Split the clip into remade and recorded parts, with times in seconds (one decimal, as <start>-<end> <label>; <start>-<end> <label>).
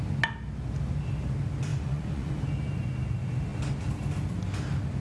0.0-1.7 recorded; 1.7-2.3 remade; 2.3-5.0 recorded